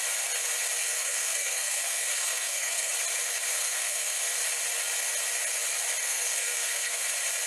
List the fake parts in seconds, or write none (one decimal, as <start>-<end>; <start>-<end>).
0.8-2.9; 3.5-4.2; 6.0-7.1